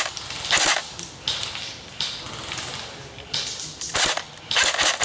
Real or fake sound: real